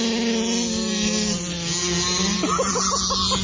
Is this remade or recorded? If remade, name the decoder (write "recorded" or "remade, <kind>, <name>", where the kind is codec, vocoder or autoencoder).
recorded